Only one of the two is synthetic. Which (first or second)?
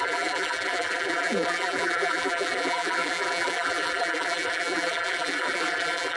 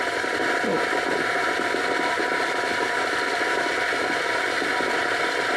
first